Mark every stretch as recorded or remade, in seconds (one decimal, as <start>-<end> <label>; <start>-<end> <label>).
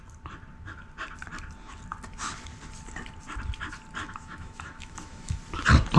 0.0-4.0 recorded; 4.0-5.4 remade; 5.4-6.0 recorded